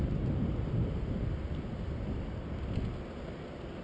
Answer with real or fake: real